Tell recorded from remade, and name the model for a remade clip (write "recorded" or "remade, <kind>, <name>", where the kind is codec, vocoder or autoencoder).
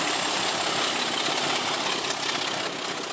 recorded